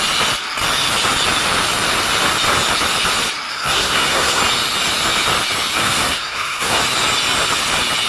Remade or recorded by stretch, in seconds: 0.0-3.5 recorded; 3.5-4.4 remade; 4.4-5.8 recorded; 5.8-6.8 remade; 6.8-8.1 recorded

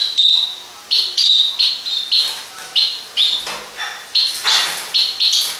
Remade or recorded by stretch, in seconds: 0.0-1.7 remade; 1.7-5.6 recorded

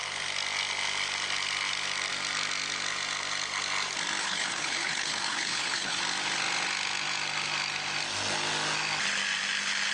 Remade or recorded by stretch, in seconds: 0.0-4.2 recorded; 4.2-6.0 remade; 6.0-9.9 recorded